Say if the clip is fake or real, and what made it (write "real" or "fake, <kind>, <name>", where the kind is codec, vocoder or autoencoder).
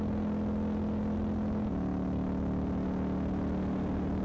real